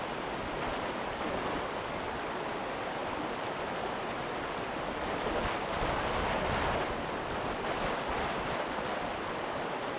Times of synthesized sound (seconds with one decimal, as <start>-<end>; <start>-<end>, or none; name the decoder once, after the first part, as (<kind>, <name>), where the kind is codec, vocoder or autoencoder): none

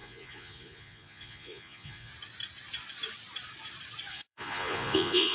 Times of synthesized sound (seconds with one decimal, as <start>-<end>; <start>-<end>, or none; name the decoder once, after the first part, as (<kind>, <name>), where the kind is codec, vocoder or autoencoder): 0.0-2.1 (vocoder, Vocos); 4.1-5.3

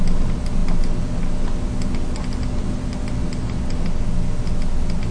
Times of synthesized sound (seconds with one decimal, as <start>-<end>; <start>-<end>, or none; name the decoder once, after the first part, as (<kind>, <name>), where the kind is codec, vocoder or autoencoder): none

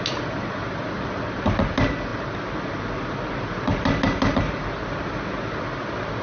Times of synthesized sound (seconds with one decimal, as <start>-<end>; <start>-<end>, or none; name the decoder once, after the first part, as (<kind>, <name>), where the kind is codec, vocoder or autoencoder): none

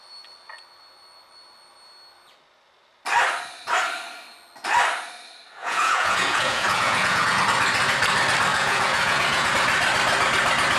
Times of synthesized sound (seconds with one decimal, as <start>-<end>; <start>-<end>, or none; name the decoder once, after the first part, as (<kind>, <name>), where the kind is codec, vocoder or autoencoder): 5.6-7.4 (vocoder, Vocos); 8.5-9.5

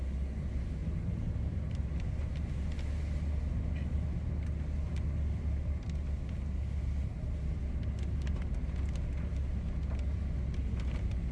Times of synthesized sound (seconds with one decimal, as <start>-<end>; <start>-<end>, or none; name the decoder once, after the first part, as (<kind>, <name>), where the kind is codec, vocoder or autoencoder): none